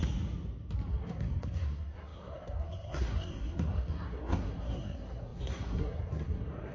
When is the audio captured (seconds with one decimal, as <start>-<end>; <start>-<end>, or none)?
0.0-0.9